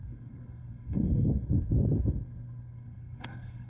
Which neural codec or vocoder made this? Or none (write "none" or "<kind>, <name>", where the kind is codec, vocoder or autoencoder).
codec, SNAC